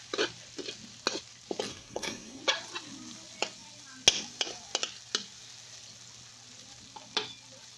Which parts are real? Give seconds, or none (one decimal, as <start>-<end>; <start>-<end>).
0.0-1.7; 2.4-7.8